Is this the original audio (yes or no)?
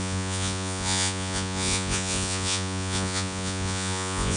no